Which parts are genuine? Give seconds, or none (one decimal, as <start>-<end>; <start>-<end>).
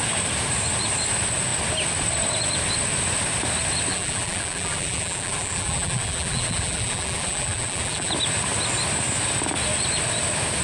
0.0-3.9; 8.1-10.6